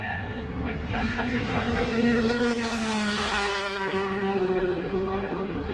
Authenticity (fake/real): fake